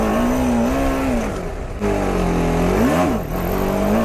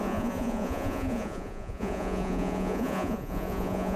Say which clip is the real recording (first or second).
first